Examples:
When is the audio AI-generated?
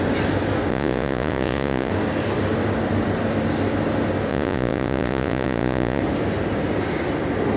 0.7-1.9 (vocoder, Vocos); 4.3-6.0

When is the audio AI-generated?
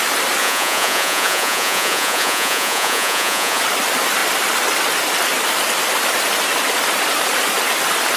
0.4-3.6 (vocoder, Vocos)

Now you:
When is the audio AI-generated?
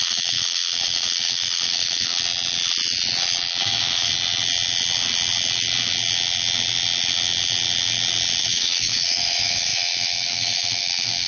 0.0-2.1 (autoencoder, DAC-VAE); 3.6-4.1; 8.4-11.3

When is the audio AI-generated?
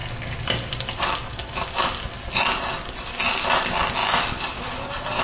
none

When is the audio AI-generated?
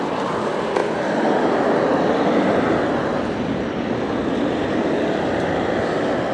none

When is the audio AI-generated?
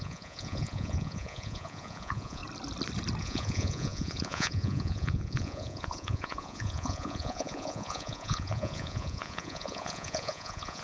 0.0-2.4 (vocoder, Vocos); 3.2-10.8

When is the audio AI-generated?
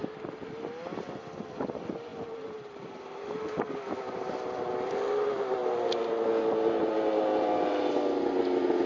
none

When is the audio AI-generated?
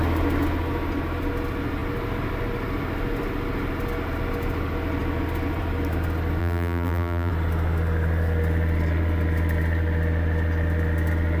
6.4-7.3 (vocoder, BigVGAN v2)